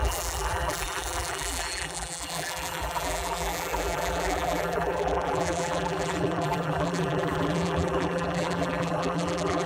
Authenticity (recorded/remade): remade